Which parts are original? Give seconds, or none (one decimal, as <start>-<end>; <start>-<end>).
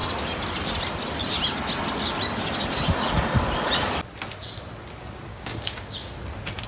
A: 0.0-5.3; 6.1-6.7